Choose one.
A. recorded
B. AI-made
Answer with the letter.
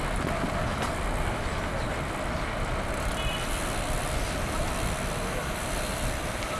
A